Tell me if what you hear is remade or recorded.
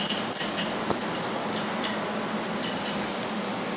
recorded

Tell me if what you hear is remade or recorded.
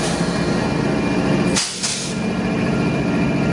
recorded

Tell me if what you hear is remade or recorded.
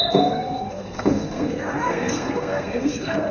remade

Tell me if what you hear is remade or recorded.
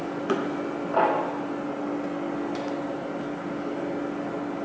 recorded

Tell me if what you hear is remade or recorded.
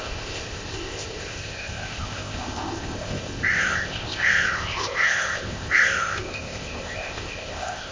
remade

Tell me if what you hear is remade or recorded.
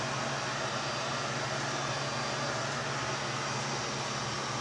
recorded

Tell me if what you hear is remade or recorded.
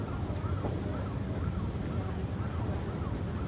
recorded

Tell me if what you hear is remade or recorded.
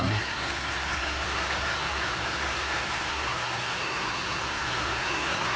remade